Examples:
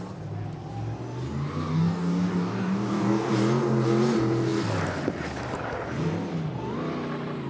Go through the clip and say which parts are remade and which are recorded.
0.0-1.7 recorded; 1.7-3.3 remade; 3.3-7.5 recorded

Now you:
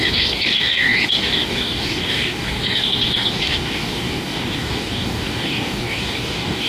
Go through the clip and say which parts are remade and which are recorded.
0.0-6.7 remade

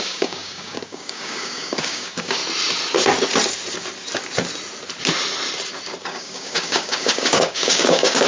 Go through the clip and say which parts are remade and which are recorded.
0.0-2.4 remade; 2.4-6.0 recorded; 6.0-8.3 remade